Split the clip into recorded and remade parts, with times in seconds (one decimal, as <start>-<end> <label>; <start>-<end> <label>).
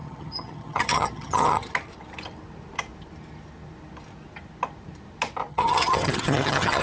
0.0-1.7 remade; 1.7-5.5 recorded; 5.5-6.8 remade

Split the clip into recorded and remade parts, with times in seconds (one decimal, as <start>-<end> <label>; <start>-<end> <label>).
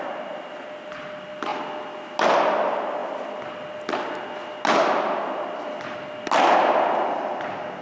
0.0-7.8 recorded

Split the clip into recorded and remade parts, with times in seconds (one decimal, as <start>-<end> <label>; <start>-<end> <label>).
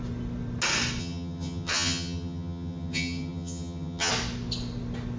0.0-1.0 recorded; 1.0-4.1 remade; 4.1-5.2 recorded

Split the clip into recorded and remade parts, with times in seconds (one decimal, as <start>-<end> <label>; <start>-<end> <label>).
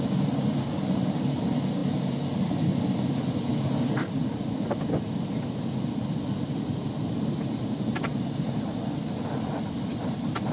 0.0-10.5 recorded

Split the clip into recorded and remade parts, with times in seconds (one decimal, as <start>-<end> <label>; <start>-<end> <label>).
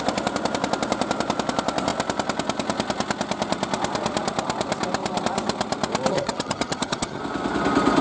0.0-6.1 recorded; 6.1-7.2 remade; 7.2-8.0 recorded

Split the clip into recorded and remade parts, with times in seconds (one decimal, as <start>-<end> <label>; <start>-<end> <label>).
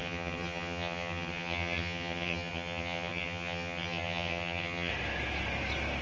0.0-4.9 remade; 4.9-6.0 recorded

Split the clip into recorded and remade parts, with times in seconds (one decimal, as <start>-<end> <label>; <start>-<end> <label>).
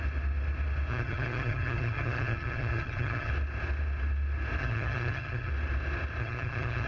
0.0-0.9 recorded; 0.9-3.3 remade; 3.3-4.6 recorded; 4.6-5.5 remade; 5.5-6.2 recorded; 6.2-6.9 remade